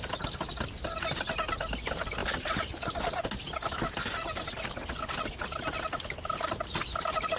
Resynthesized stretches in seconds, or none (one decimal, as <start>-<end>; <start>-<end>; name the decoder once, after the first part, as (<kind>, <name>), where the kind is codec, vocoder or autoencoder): none